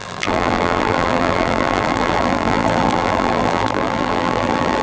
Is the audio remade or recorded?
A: remade